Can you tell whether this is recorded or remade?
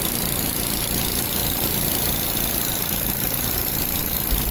recorded